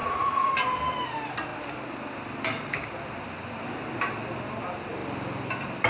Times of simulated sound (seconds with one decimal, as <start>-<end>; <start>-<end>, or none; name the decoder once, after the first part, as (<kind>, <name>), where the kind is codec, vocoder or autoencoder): 0.0-0.5 (vocoder, Vocos)